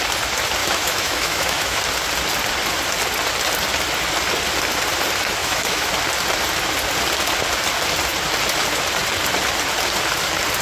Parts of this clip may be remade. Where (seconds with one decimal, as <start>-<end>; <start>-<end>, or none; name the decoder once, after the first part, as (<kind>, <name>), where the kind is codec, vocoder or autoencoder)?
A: 0.6-1.8 (autoencoder, DAC-VAE); 5.4-5.9